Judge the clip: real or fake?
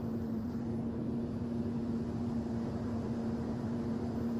fake